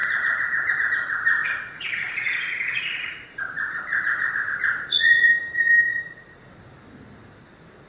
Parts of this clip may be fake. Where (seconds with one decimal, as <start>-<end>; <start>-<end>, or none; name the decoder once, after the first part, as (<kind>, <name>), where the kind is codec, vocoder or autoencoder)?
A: 1.4-3.4 (vocoder, Vocos); 3.9-5.3; 5.9-6.5